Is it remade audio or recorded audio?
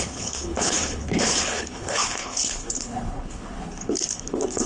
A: remade